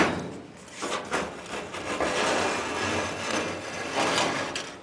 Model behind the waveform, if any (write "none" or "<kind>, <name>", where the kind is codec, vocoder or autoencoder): none